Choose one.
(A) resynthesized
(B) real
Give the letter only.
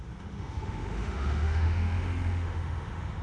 A